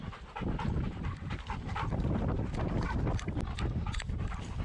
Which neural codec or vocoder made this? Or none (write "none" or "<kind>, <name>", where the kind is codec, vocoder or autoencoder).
none